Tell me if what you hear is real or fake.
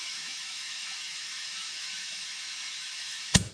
fake